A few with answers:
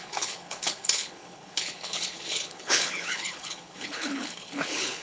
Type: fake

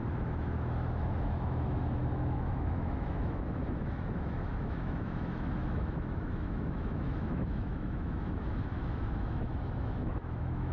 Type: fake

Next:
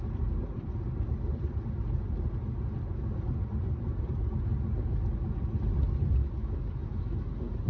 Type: real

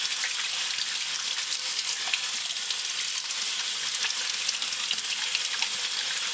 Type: real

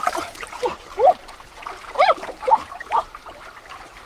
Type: fake